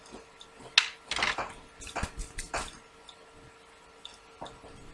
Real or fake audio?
real